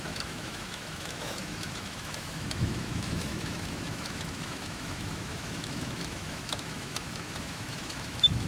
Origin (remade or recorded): remade